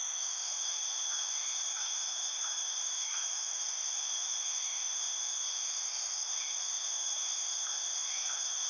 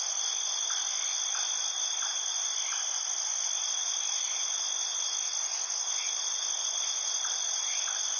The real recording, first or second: second